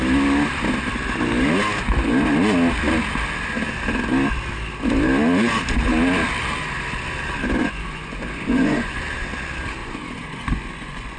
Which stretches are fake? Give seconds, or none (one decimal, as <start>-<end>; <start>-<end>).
7.6-9.0; 9.8-11.2